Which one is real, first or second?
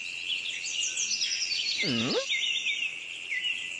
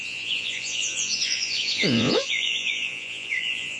first